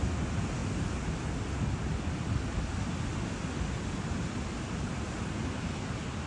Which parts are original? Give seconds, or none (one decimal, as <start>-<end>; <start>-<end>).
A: 0.0-6.3